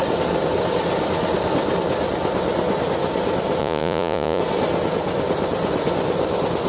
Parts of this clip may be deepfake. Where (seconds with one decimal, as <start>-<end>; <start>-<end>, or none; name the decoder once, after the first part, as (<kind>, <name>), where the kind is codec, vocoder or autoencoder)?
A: 3.6-4.4 (vocoder, Vocos)